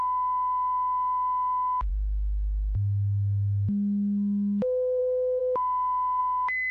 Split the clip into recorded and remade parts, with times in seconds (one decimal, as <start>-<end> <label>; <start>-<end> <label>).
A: 0.0-6.7 recorded